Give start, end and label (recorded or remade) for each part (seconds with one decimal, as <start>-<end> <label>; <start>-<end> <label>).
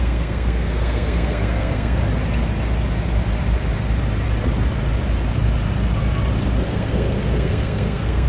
0.0-2.0 remade; 2.0-6.6 recorded; 6.6-8.3 remade